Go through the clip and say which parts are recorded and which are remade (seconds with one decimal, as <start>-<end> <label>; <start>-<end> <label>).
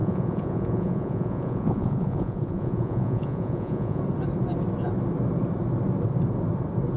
0.0-4.0 remade; 4.0-7.0 recorded